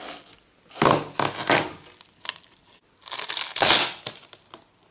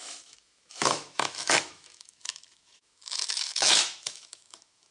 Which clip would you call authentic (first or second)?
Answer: first